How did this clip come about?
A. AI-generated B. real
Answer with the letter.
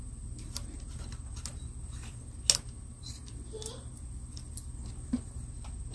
B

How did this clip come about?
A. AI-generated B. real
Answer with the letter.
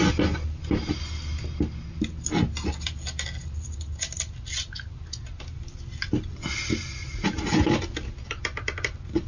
B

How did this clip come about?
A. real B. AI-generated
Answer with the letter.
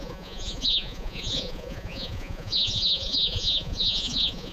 B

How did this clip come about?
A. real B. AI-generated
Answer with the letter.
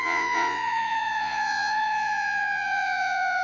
B